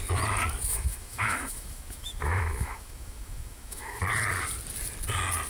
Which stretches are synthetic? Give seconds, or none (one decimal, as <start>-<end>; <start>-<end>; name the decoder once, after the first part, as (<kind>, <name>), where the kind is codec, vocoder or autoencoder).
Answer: 0.7-4.0 (autoencoder, DAC-VAE)